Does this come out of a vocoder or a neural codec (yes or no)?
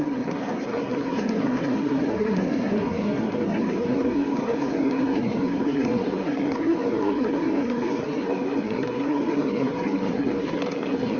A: yes